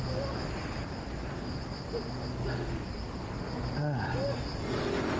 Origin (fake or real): real